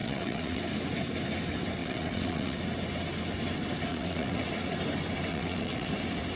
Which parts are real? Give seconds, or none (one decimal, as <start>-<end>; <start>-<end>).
0.6-1.8; 2.6-3.9; 4.5-5.3; 5.9-6.4